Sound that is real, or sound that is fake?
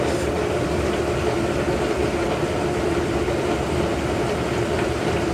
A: real